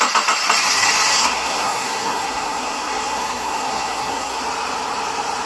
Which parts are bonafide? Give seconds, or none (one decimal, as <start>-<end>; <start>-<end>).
0.0-1.1; 4.4-5.5